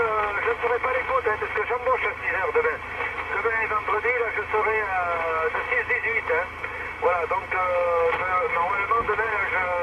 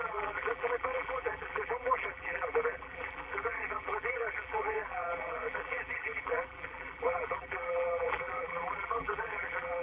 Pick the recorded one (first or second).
first